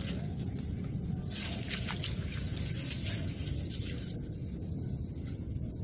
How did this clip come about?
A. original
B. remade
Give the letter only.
A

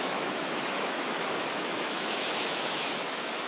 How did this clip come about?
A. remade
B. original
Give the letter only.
A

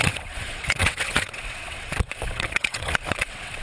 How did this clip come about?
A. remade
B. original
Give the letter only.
A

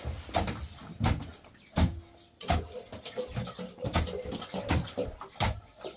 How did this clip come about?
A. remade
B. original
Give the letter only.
B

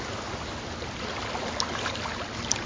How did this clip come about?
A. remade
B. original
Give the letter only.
B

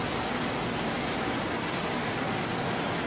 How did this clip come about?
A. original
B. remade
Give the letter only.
A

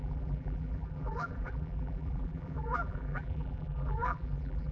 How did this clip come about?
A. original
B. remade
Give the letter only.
B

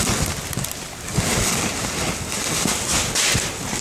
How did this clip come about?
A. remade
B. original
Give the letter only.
B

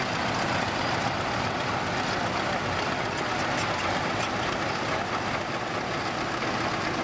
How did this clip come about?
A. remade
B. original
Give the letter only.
B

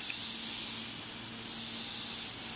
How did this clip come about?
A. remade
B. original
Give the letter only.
B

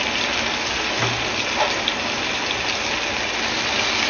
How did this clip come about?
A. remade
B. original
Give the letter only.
B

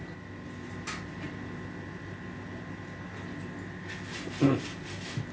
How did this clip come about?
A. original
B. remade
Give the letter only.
A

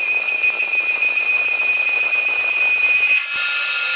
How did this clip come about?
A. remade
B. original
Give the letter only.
B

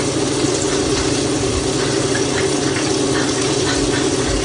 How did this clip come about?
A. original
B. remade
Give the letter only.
A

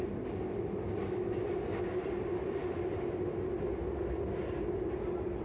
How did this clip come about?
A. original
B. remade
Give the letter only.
A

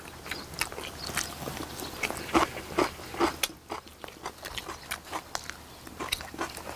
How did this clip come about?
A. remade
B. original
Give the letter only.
B